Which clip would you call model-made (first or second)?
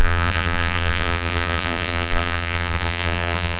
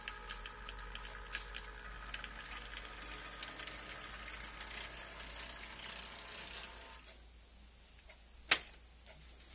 first